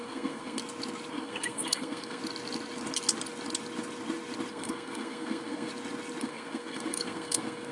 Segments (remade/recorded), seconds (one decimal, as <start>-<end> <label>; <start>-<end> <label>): 0.0-0.6 remade; 0.6-1.1 recorded; 1.1-2.2 remade; 2.2-4.5 recorded; 4.5-5.7 remade; 5.7-6.2 recorded; 6.2-7.7 remade